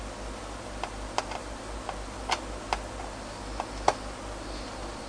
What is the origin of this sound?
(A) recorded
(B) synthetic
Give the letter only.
A